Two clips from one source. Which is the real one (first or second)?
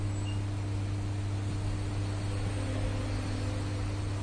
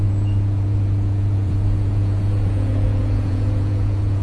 first